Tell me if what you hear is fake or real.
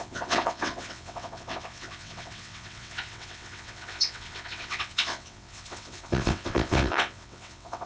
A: fake